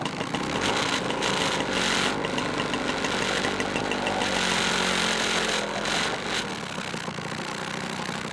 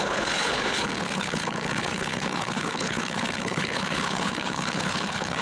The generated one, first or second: second